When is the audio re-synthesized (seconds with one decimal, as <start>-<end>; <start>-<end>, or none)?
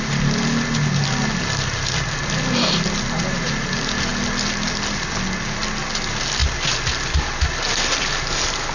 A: none